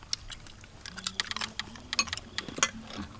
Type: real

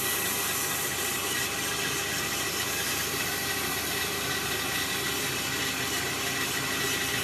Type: real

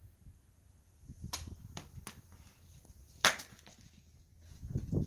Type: real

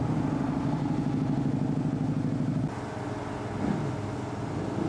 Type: real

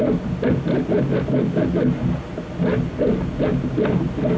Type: real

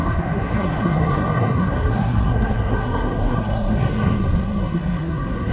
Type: fake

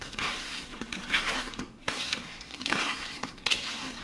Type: fake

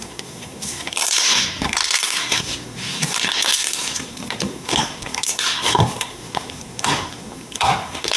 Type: fake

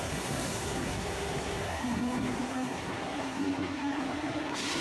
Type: fake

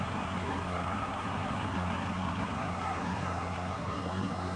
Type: fake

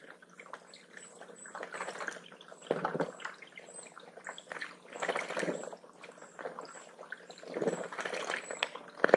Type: real